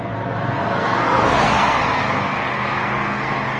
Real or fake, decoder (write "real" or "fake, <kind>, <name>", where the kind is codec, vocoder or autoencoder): fake, codec, SNAC